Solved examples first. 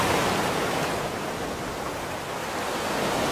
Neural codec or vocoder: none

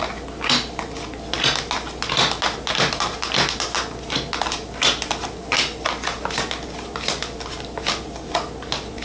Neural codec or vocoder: none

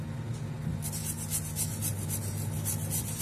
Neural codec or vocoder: none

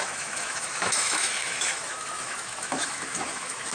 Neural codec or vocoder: autoencoder, DAC-VAE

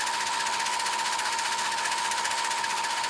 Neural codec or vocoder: autoencoder, DAC-VAE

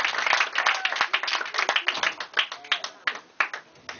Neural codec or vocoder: none